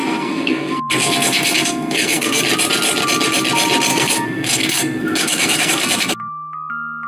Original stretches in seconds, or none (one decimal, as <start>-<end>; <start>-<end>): 2.4-3.9; 6.1-7.1